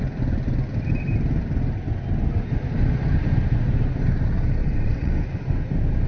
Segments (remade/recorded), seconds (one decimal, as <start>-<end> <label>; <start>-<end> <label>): 0.0-4.6 recorded; 4.6-5.1 remade; 5.1-6.1 recorded